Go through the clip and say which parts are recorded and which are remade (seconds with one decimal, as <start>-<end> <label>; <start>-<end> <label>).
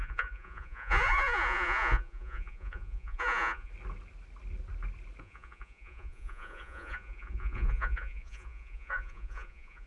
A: 0.0-3.7 remade; 3.7-5.2 recorded; 5.2-9.9 remade